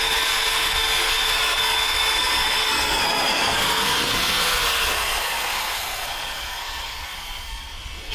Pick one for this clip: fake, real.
fake